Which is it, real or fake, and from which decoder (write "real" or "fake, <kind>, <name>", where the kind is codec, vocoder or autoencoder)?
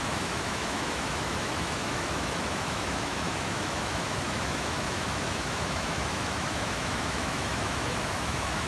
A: fake, autoencoder, DAC-VAE